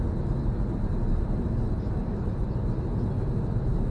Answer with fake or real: real